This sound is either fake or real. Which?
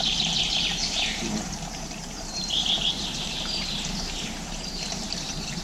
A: fake